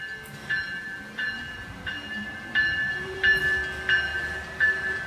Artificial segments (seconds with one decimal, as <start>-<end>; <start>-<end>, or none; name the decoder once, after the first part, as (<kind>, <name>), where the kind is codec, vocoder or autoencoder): 0.4-3.4 (vocoder, BigVGAN v2); 4.1-5.1